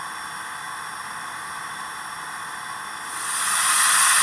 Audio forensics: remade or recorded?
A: recorded